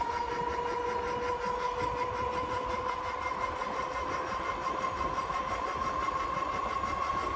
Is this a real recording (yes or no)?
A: yes